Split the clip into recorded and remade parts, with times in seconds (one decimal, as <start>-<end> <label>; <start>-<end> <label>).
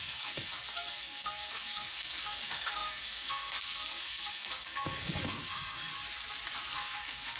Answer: 0.0-5.9 remade; 5.9-6.7 recorded; 6.7-7.4 remade